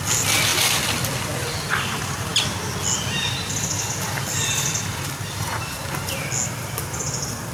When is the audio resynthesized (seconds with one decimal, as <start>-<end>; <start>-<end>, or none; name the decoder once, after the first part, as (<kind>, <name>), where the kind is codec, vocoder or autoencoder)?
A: none